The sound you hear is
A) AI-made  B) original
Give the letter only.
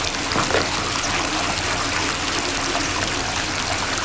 B